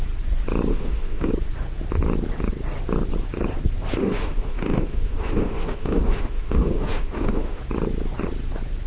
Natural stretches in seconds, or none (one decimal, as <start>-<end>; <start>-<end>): 0.0-0.7; 1.3-4.0; 7.6-8.9